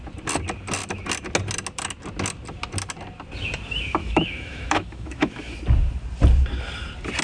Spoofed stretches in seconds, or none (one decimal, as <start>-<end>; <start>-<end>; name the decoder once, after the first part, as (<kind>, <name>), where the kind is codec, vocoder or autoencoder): 4.0-5.6 (autoencoder, DAC-VAE)